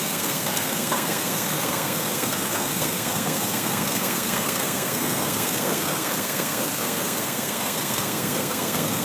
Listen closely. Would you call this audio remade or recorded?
remade